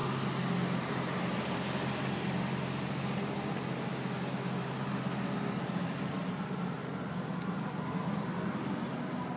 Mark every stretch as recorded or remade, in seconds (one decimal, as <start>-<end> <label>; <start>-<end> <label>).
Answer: 0.0-9.4 recorded